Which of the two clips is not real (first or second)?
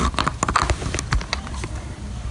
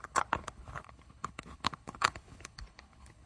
second